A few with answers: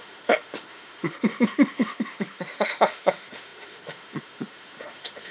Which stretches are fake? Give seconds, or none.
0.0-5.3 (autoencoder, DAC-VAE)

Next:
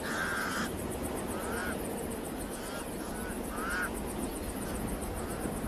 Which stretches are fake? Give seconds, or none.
none

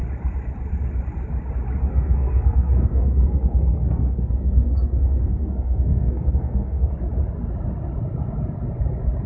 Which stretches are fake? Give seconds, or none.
1.8-6.9 (codec, SNAC)

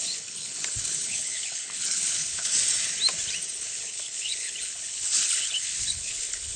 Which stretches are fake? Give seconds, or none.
0.0-2.5 (codec, HILCodec); 3.5-6.6

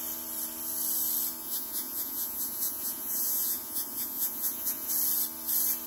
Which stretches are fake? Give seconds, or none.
1.4-4.9 (vocoder, Vocos)

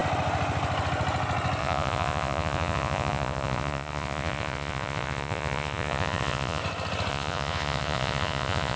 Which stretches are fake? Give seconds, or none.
1.6-6.6 (vocoder, Vocos); 7.1-8.8